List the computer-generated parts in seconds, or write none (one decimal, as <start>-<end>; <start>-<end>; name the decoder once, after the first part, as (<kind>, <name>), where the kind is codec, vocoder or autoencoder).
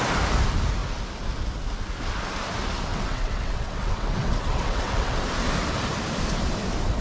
2.9-5.2 (vocoder, WaveNeXt)